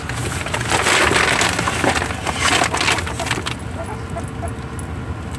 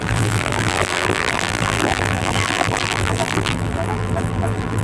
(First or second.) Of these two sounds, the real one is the first